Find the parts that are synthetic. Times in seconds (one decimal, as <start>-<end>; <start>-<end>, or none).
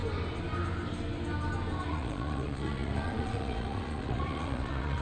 1.9-5.0